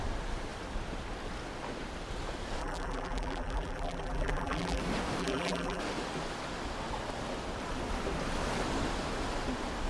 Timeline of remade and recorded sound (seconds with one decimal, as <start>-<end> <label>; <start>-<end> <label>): 0.0-2.6 recorded; 2.6-4.8 remade; 4.8-5.2 recorded; 5.2-5.8 remade; 5.8-9.9 recorded